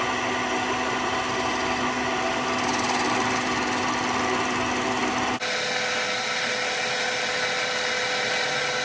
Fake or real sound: real